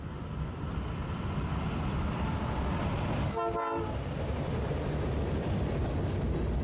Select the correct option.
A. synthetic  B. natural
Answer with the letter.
B